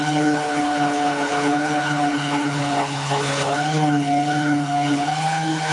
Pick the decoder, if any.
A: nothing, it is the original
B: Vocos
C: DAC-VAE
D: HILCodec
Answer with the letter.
D